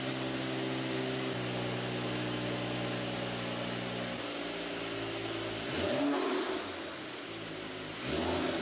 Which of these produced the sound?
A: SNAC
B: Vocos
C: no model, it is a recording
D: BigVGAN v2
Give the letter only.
C